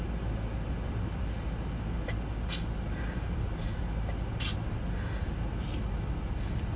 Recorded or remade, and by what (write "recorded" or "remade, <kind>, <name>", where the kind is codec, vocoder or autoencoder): recorded